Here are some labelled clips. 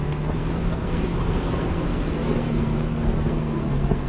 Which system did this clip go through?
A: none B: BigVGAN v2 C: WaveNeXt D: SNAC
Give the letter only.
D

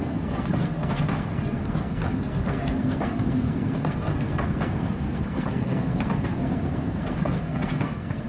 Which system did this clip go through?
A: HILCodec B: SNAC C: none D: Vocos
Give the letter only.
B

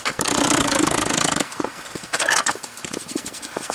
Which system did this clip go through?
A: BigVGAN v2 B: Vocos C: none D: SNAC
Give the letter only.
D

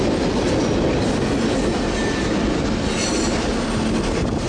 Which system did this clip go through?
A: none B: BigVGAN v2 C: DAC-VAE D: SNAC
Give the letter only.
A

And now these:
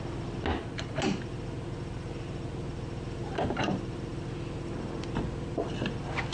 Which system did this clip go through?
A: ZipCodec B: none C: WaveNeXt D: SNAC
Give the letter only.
B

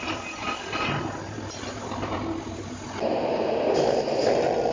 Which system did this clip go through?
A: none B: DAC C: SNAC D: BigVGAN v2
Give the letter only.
A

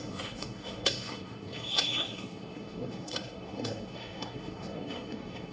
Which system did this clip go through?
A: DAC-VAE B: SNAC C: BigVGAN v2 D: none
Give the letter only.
B